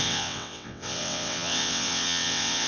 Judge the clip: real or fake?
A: fake